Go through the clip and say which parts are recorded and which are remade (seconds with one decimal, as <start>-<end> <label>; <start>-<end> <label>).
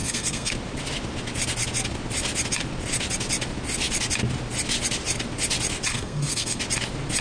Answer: 0.0-0.5 remade; 0.5-5.9 recorded; 5.9-6.6 remade; 6.6-7.2 recorded